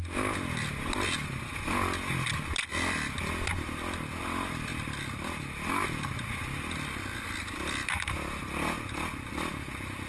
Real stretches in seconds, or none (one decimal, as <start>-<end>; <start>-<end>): 0.0-10.1